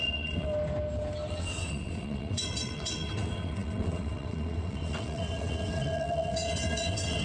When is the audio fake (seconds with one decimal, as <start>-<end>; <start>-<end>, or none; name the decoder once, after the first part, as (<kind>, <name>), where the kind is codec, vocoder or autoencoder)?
0.0-0.5 (vocoder, WaveNeXt); 1.3-7.2